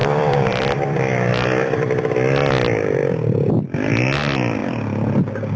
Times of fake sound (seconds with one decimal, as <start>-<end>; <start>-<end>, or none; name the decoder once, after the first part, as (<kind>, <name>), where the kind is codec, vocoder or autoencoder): 0.0-3.0 (vocoder, BigVGAN v2); 3.5-4.6